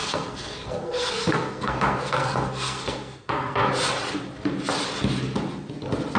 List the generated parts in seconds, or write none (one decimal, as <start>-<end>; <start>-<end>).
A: 0.0-3.7